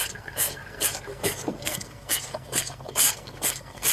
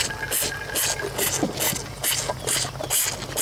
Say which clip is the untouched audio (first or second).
second